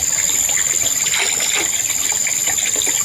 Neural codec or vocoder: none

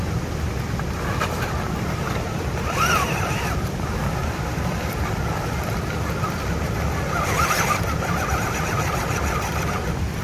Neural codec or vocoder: vocoder, BigVGAN v2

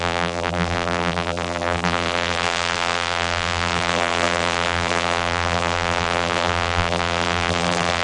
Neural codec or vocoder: vocoder, BigVGAN v2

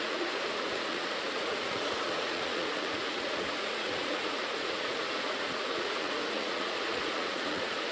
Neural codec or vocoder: vocoder, Vocos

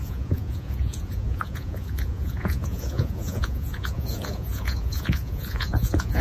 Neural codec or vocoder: vocoder, Vocos